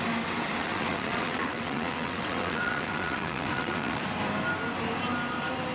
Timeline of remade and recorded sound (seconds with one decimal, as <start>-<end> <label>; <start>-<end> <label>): 0.0-0.6 recorded; 0.6-4.0 remade; 4.0-5.7 recorded